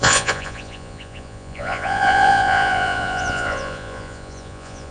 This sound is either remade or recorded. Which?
remade